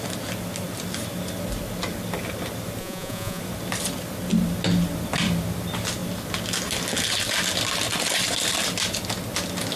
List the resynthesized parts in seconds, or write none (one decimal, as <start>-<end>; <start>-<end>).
2.8-3.4